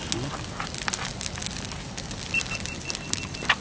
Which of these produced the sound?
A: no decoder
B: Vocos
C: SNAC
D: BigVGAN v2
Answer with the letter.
A